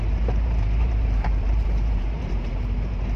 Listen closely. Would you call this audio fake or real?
fake